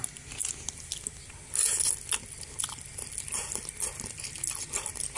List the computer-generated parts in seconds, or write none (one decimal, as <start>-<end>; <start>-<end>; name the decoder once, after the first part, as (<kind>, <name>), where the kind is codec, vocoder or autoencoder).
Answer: none